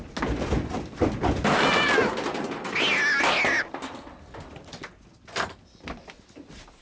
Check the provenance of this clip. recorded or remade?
recorded